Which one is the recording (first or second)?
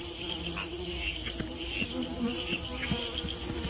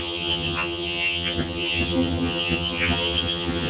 first